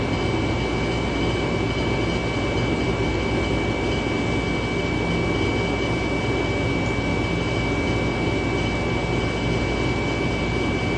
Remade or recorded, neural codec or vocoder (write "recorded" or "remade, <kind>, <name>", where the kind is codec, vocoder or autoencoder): recorded